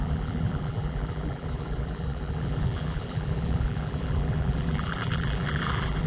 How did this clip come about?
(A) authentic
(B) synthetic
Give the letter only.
B